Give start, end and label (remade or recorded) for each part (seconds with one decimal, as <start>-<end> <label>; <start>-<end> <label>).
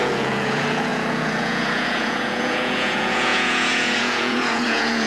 0.0-5.1 remade